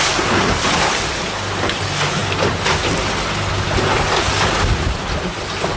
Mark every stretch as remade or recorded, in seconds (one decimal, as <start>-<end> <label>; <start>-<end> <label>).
0.0-5.8 recorded